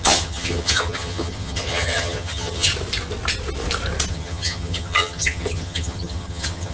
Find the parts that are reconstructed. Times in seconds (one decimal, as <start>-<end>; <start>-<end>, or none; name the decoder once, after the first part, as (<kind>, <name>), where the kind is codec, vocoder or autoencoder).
0.0-2.7 (vocoder, HiFi-GAN); 4.1-6.7